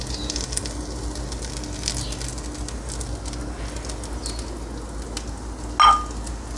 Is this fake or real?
real